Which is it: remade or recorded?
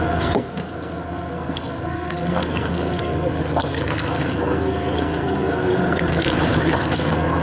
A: remade